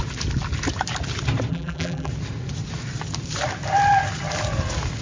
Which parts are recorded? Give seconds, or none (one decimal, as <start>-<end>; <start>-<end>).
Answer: 0.0-1.5; 2.1-5.0